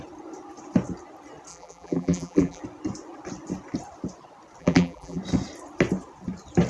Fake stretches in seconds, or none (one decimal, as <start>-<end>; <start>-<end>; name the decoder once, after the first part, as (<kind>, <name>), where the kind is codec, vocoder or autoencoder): 1.5-2.6 (vocoder, BigVGAN v2); 4.6-5.2